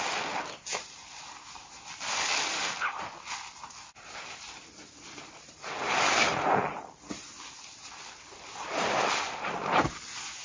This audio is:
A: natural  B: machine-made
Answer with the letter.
B